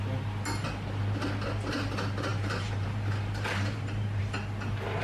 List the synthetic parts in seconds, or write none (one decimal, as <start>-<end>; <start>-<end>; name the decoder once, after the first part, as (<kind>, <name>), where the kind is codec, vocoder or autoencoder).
2.3-4.2 (vocoder, BigVGAN v2)

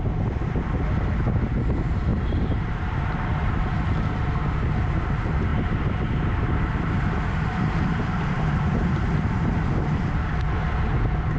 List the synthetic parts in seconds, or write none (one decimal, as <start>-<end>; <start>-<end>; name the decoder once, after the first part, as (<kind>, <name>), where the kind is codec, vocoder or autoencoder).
2.1-3.7 (vocoder, BigVGAN v2); 5.5-9.6

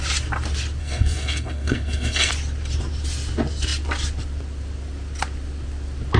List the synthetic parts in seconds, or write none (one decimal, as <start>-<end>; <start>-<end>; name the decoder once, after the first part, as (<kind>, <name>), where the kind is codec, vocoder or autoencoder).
0.8-2.3 (codec, SNAC)

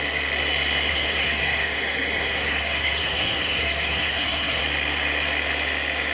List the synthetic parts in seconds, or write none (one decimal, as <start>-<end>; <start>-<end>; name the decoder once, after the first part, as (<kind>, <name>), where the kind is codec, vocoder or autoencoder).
0.9-4.6 (codec, SNAC)

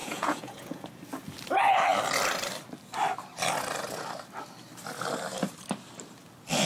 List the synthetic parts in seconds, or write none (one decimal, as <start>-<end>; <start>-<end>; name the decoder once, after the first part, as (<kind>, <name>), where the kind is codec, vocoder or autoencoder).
0.0-0.9 (vocoder, Vocos)

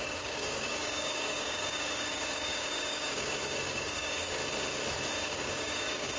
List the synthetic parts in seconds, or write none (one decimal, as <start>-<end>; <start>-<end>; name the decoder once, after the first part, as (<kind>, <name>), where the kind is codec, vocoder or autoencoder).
0.0-4.4 (codec, DAC); 5.2-6.2